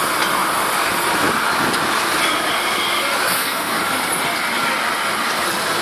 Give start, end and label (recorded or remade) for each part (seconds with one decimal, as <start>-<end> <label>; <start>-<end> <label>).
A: 0.0-3.2 recorded; 3.2-3.8 remade; 3.8-5.8 recorded